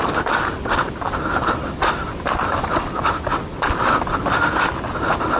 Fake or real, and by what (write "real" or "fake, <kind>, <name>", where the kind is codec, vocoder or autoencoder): real